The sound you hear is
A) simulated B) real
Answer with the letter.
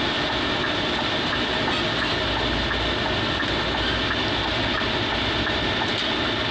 B